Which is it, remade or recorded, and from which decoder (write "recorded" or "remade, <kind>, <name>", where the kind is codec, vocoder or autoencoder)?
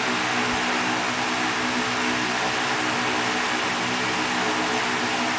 recorded